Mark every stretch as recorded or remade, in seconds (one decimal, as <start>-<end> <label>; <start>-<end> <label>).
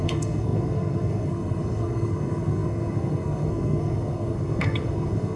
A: 0.0-5.4 remade